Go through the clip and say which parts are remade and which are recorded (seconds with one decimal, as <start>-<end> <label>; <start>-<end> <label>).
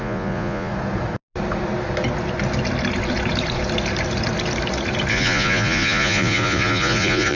0.0-0.7 remade; 0.7-5.1 recorded; 5.1-7.3 remade